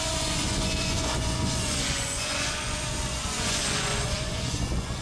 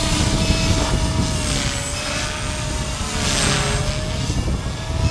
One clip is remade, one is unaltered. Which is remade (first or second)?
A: first